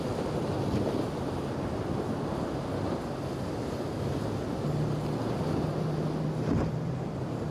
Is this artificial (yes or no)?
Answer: no